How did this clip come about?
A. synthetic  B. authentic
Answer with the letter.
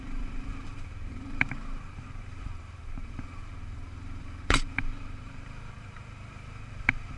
A